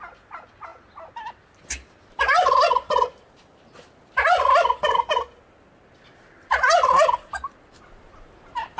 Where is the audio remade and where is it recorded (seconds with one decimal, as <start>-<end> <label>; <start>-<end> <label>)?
0.0-8.8 recorded